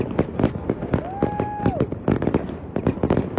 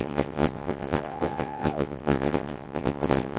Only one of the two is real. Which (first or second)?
first